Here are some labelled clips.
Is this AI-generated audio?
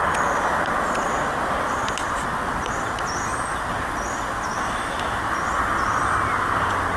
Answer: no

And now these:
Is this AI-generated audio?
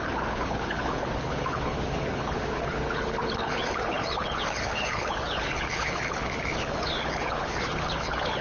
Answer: yes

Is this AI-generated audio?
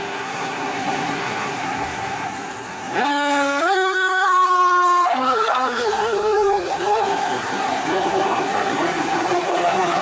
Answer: yes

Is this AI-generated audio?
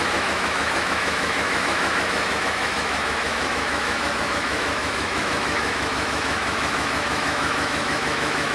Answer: yes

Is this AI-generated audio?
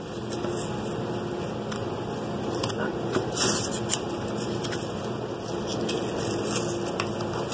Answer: no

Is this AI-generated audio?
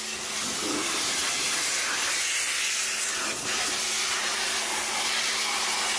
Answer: no